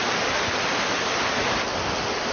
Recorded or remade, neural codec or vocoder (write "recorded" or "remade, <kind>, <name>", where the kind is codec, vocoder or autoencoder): recorded